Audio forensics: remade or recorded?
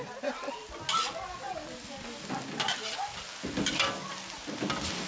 recorded